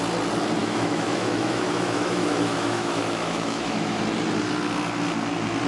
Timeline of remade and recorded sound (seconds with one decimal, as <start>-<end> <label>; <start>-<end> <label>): 0.0-0.6 recorded; 0.6-4.0 remade; 4.0-5.7 recorded